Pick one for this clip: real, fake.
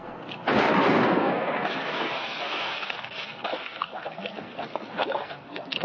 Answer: fake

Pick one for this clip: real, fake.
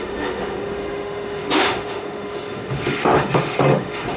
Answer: fake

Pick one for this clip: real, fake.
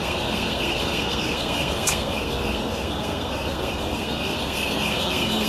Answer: fake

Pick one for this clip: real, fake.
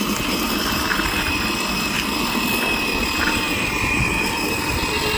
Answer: real